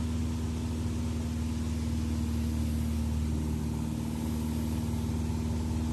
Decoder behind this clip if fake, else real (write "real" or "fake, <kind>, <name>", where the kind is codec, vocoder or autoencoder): real